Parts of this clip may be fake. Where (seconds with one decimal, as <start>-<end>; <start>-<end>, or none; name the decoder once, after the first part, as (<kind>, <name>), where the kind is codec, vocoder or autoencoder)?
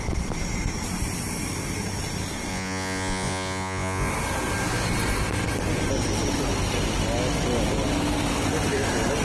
2.5-4.1 (vocoder, Vocos)